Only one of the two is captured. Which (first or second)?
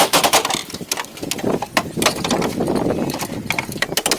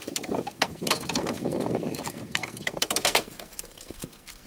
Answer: first